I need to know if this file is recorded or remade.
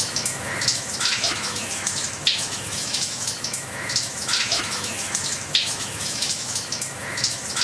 remade